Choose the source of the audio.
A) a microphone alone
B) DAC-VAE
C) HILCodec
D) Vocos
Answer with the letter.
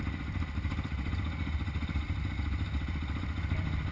A